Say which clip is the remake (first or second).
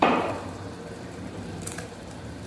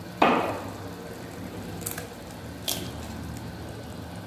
first